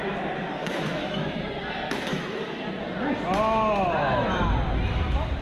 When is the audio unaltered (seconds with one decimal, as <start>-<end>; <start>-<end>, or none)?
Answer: 0.0-0.6; 1.4-2.1; 2.6-4.0; 4.5-5.4

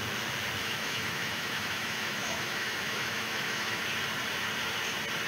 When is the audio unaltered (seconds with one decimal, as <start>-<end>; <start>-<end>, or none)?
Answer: 0.0-0.6; 3.8-5.3

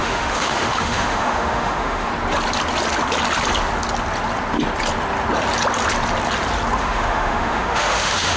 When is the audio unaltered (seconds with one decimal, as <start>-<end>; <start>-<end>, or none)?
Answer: 2.1-6.8

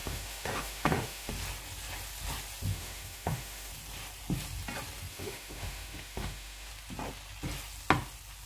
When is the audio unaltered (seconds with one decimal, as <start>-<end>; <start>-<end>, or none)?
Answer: 1.3-2.7; 3.7-5.1; 6.7-8.5

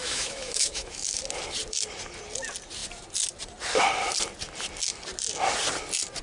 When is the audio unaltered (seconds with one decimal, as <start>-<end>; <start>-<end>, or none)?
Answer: 1.2-6.2

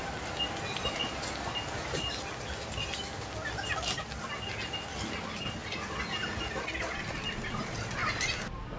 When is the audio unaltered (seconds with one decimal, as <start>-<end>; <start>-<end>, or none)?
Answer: 0.0-8.8

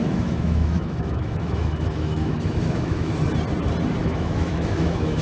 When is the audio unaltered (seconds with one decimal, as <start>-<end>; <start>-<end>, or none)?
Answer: 3.1-4.0